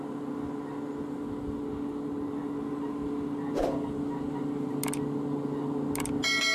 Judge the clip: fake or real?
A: real